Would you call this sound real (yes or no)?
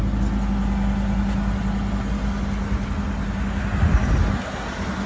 yes